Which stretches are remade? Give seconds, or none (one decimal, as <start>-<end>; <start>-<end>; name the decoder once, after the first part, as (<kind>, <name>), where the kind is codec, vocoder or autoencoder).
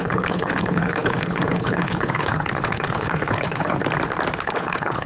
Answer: 0.0-3.8 (codec, HILCodec); 4.4-5.1